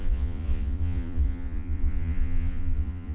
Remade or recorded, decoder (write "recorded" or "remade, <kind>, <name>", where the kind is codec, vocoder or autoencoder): remade, vocoder, Vocos